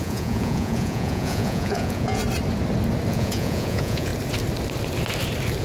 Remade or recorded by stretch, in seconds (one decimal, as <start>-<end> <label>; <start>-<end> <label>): 0.0-2.2 remade; 2.2-3.1 recorded; 3.1-4.1 remade; 4.1-5.6 recorded